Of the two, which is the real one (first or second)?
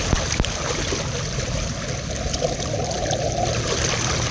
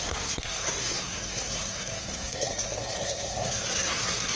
first